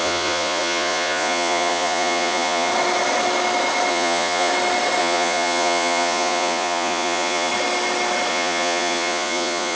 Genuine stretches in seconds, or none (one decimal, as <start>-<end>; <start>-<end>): 2.7-3.9; 4.5-5.0; 7.5-8.3